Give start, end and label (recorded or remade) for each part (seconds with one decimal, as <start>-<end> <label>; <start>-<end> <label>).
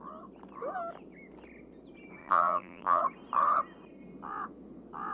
0.0-2.2 recorded; 2.2-3.0 remade; 3.0-5.1 recorded